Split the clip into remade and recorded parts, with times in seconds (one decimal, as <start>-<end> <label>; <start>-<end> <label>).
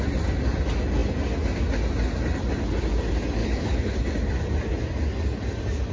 0.0-3.4 recorded; 3.4-4.0 remade; 4.0-5.9 recorded